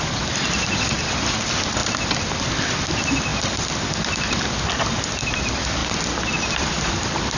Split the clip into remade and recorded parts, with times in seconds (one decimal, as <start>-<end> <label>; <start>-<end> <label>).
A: 0.0-1.8 remade; 1.8-2.3 recorded; 2.3-3.3 remade; 3.3-4.4 recorded; 4.4-5.8 remade; 5.8-6.3 recorded; 6.3-7.4 remade